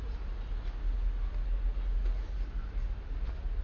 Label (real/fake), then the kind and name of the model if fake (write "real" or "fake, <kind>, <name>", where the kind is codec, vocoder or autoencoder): real